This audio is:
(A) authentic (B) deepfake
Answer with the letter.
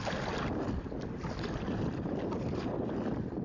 A